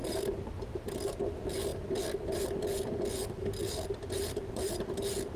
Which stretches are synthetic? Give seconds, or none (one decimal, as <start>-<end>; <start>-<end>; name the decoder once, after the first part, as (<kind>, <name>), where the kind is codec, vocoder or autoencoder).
0.0-0.6 (vocoder, BigVGAN v2)

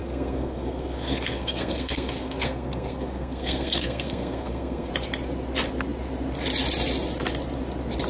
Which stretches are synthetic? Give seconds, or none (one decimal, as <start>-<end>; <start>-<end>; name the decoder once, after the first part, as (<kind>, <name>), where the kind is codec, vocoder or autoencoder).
0.0-4.9 (codec, SNAC)